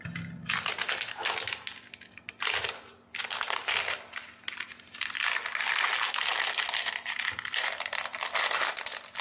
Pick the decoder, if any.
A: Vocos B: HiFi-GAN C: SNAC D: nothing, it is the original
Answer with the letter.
D